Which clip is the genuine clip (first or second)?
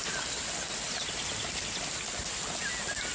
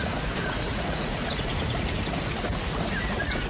first